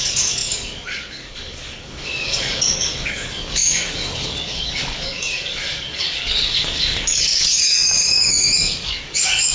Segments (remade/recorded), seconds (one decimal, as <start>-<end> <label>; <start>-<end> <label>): 0.0-9.5 remade